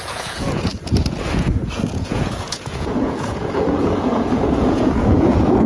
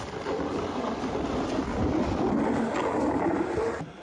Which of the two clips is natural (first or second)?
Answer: second